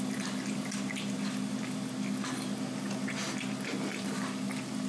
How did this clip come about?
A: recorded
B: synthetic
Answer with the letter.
A